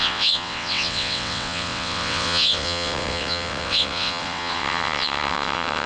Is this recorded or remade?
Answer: remade